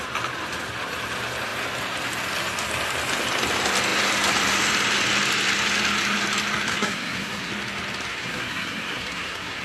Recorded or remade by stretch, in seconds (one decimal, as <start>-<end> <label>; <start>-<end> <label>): 0.0-6.7 recorded; 6.7-7.5 remade; 7.5-8.1 recorded; 8.1-9.6 remade